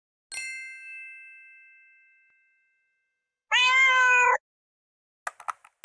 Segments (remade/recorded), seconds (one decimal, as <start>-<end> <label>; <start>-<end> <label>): 0.0-3.6 recorded; 3.6-4.4 remade; 4.4-5.8 recorded